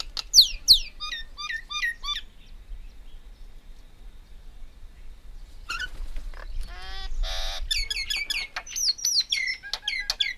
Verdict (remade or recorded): recorded